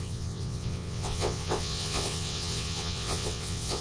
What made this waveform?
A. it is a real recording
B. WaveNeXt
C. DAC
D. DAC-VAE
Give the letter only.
B